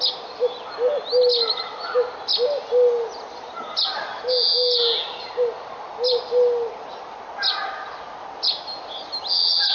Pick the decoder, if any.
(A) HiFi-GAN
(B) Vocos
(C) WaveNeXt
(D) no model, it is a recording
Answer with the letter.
D